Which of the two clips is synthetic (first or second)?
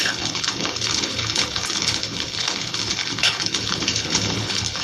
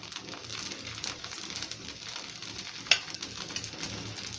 first